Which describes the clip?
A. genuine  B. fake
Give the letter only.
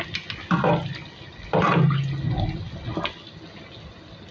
A